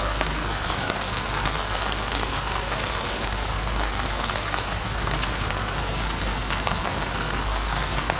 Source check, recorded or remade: remade